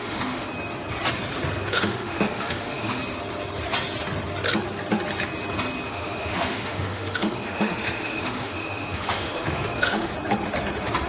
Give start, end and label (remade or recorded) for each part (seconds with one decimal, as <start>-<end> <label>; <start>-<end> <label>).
0.0-0.5 remade; 0.5-1.7 recorded; 1.7-3.0 remade; 3.0-5.9 recorded; 5.9-10.1 remade; 10.1-11.1 recorded